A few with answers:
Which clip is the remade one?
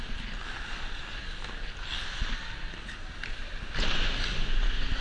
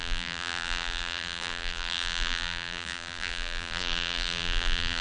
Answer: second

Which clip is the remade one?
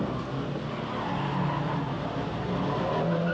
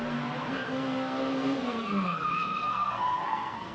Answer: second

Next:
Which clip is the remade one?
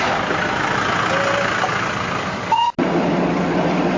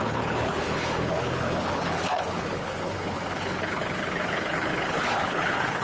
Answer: second